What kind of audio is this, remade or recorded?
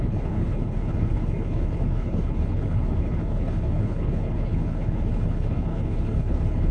remade